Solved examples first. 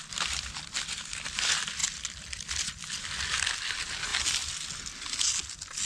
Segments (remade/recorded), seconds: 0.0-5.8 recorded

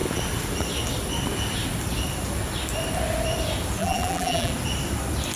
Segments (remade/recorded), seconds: 0.0-3.8 recorded; 3.8-4.5 remade; 4.5-5.4 recorded